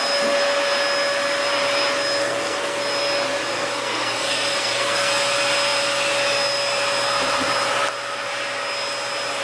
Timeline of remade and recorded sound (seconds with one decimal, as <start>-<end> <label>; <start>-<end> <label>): 0.0-2.2 recorded; 2.2-2.8 remade; 2.8-3.5 recorded; 3.5-5.1 remade; 5.1-9.4 recorded